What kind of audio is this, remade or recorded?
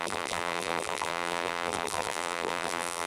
remade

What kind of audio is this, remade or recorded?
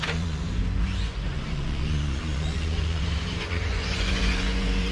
remade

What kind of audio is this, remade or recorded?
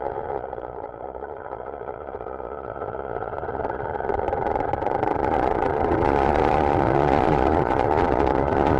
remade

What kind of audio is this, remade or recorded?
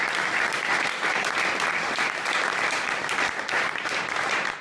recorded